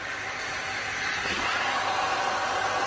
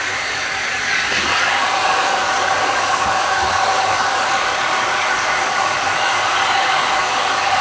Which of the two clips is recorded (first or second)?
first